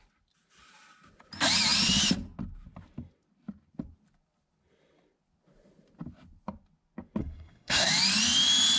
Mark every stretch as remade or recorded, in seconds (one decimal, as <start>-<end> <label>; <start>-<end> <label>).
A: 0.0-7.2 recorded; 7.2-7.9 remade; 7.9-8.8 recorded